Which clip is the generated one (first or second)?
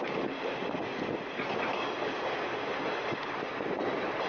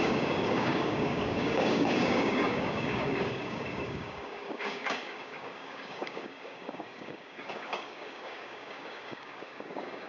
second